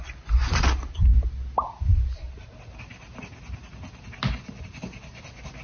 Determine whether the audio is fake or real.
real